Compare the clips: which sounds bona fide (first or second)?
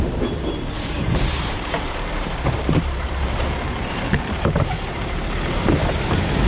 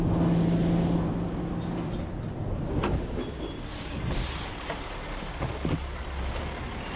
second